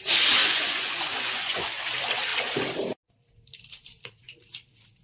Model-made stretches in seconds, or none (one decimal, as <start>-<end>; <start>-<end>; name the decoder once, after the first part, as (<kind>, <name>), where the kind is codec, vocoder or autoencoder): 0.4-1.8 (vocoder, Vocos)